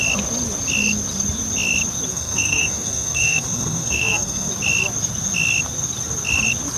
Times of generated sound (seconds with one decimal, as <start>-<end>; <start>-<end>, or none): 2.1-4.5